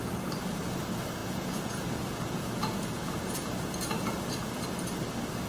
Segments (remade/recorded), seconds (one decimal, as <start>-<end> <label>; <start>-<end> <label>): 0.0-1.2 recorded; 1.2-3.5 remade; 3.5-5.5 recorded